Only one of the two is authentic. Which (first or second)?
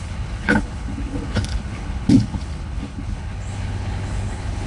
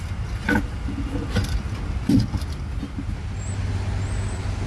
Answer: second